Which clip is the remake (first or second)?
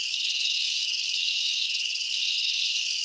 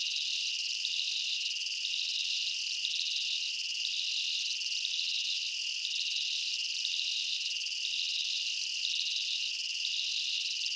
first